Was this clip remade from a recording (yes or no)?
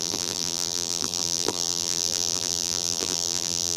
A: yes